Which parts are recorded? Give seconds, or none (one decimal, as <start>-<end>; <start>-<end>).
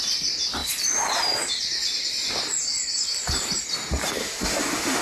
0.0-4.2